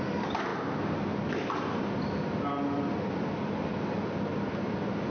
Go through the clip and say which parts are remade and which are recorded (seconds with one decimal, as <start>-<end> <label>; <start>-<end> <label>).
0.0-5.1 recorded